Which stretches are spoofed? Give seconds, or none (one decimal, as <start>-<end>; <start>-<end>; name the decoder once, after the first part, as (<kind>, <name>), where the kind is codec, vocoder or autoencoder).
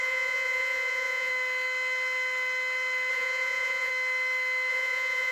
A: 0.0-1.3 (vocoder, Vocos); 3.1-3.9; 4.7-5.3